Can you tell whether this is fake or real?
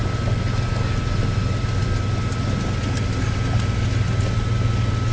real